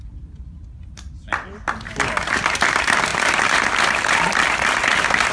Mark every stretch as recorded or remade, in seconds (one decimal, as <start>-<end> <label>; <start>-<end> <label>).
0.0-3.1 recorded; 3.1-4.8 remade; 4.8-5.3 recorded